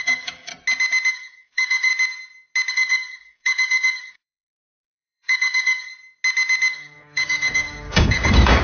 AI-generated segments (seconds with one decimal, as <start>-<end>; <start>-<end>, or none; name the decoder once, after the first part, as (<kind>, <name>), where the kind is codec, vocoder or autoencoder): 0.0-0.5 (codec, DAC); 1.1-1.9; 2.7-5.9; 6.7-8.6